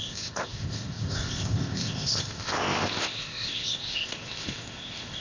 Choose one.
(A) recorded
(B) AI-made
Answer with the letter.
B